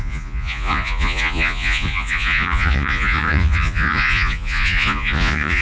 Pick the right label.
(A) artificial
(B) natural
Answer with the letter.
A